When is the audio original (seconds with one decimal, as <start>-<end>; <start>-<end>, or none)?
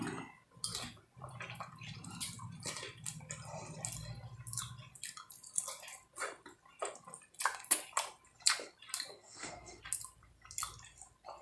0.0-9.1; 9.8-11.4